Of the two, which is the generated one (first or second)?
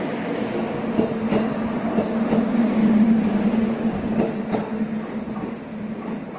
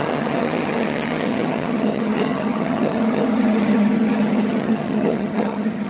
second